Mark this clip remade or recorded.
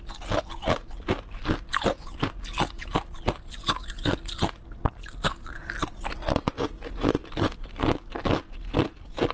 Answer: recorded